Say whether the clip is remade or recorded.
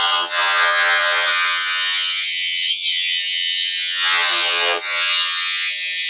remade